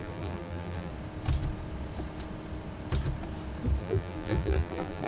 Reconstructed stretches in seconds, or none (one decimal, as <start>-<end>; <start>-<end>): 0.0-0.9; 3.8-5.1